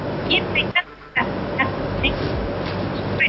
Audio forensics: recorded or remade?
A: recorded